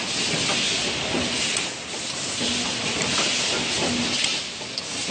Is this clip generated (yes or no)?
no